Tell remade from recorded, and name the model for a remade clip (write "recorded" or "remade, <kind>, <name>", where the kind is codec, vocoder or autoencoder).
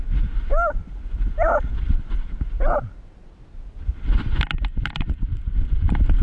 recorded